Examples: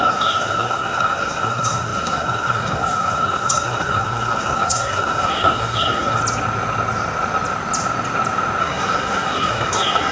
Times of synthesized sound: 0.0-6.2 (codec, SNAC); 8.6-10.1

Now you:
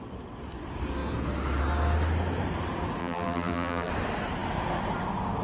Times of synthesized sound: 3.0-3.9 (vocoder, BigVGAN v2)

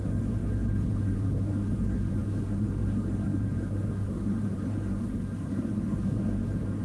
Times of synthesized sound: 0.0-6.8 (codec, SNAC)

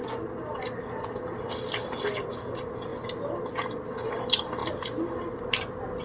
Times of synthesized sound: none

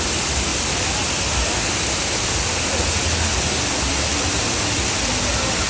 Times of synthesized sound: none

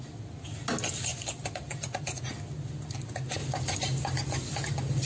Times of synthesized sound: 1.1-2.2 (vocoder, BigVGAN v2); 3.4-5.1

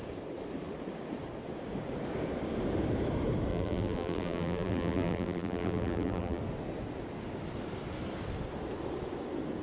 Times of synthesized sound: 3.5-6.4 (vocoder, BigVGAN v2)